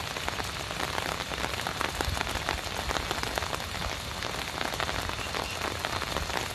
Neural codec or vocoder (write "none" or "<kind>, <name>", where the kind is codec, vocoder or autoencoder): none